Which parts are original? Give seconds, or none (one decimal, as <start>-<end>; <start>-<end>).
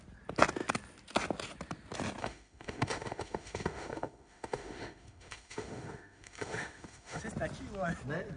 0.0-2.2; 7.2-8.4